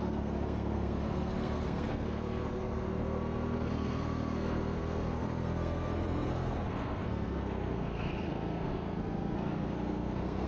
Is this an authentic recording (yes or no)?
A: no